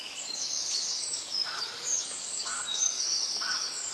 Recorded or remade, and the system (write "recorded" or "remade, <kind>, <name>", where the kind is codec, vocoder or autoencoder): remade, codec, DAC